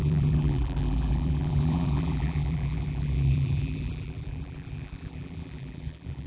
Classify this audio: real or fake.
fake